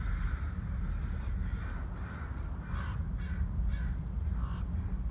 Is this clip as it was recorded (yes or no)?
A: yes